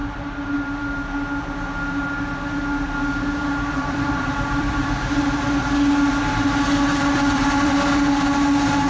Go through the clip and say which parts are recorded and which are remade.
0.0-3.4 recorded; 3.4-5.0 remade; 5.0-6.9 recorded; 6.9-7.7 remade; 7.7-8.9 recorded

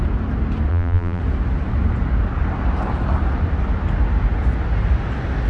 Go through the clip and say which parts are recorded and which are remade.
0.0-0.7 recorded; 0.7-1.2 remade; 1.2-5.5 recorded

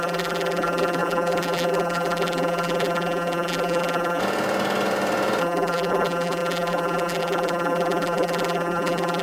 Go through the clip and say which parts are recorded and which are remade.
0.0-4.2 remade; 4.2-5.4 recorded; 5.4-9.2 remade